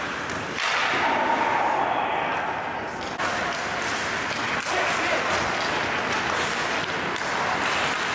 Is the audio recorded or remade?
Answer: recorded